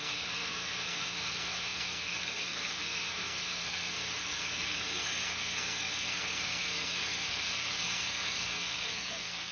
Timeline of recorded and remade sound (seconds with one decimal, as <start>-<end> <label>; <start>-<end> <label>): 0.0-9.5 remade